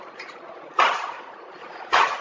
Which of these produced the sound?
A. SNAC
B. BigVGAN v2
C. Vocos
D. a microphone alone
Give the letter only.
C